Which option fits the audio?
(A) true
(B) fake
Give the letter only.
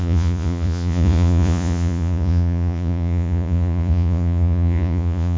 B